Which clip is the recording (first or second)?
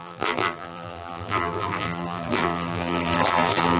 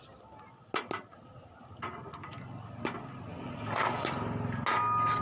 second